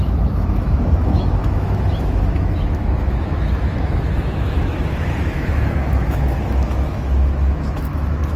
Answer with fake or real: fake